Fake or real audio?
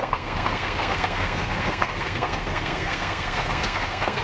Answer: fake